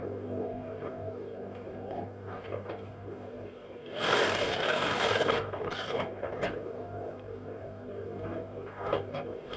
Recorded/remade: remade